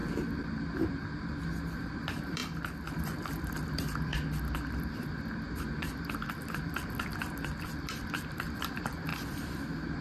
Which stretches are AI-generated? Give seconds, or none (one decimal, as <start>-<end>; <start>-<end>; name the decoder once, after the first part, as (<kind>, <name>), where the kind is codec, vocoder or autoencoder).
1.8-4.1 (vocoder, BigVGAN v2); 6.3-9.1